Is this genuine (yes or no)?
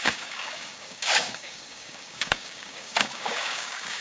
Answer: no